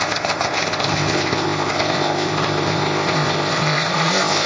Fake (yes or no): yes